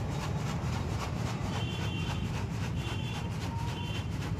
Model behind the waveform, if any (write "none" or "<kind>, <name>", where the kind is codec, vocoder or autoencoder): vocoder, BigVGAN v2